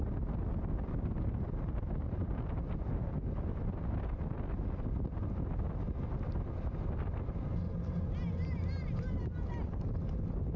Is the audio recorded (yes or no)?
yes